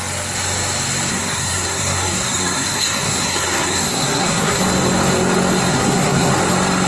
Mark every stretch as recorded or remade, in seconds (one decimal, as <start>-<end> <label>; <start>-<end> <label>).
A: 0.0-1.1 recorded; 1.1-4.6 remade; 4.6-5.7 recorded; 5.7-6.3 remade; 6.3-6.9 recorded